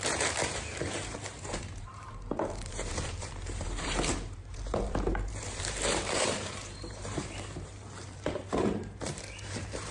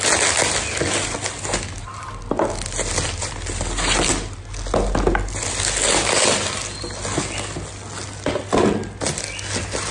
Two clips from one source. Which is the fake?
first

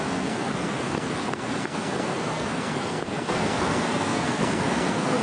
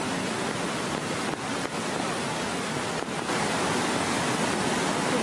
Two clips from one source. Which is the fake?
first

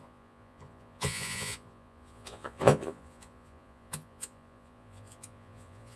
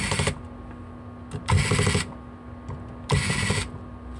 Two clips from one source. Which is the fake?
first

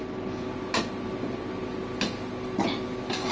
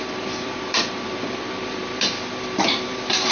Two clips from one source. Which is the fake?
second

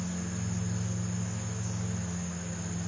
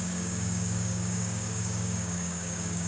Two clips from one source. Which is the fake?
second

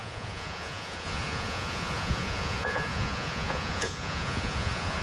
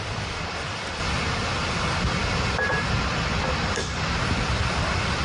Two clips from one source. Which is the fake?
first